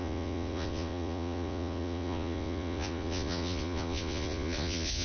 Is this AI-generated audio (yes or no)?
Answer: yes